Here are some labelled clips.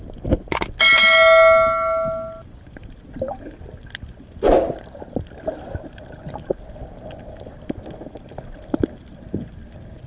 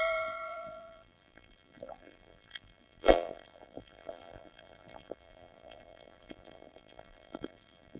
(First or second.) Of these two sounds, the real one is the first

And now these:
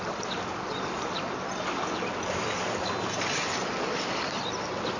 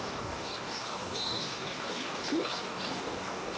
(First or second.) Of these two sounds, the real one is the first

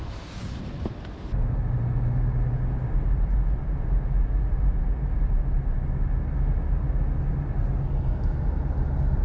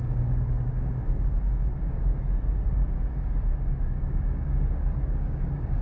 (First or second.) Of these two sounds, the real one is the first